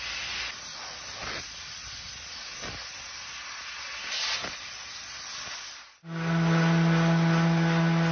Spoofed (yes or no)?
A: no